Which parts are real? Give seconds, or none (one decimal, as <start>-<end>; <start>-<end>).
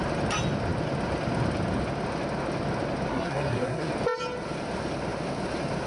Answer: 0.0-3.1; 3.9-5.9